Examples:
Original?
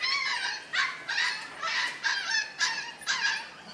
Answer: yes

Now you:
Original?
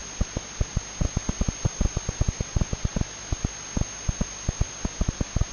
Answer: yes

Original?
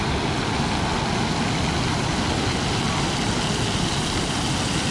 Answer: yes